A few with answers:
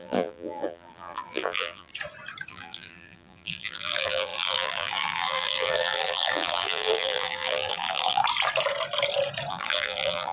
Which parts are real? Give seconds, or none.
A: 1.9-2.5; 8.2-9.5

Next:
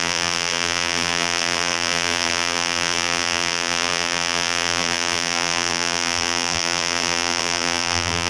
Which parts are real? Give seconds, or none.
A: none